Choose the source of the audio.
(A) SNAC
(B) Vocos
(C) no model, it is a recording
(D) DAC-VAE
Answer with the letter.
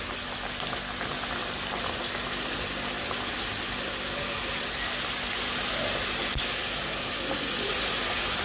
C